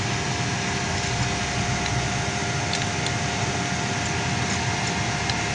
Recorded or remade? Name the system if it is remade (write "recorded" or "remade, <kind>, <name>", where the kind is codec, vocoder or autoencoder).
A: recorded